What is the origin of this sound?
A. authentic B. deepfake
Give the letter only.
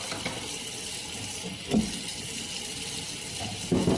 A